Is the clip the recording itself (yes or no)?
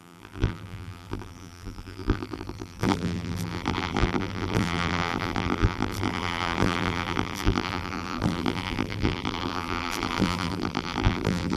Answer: no